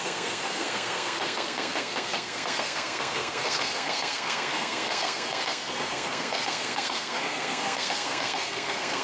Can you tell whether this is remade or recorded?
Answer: remade